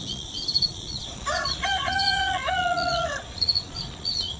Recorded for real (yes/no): no